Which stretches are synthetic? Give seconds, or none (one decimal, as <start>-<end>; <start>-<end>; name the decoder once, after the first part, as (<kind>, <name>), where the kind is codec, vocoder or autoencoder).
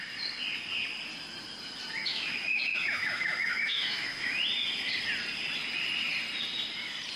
2.0-4.4 (autoencoder, DAC-VAE)